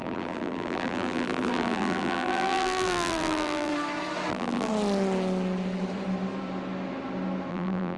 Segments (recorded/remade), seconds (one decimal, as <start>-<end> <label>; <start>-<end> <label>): 0.0-3.7 remade; 3.7-4.3 recorded; 4.3-4.7 remade; 4.7-7.5 recorded; 7.5-8.0 remade